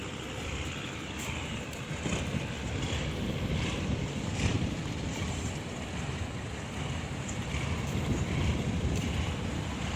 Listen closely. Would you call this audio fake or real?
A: fake